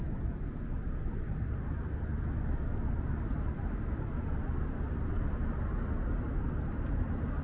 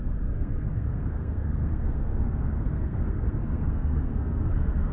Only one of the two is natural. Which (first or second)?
first